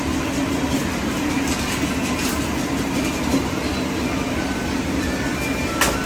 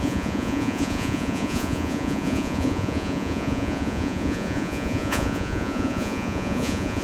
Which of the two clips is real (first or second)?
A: first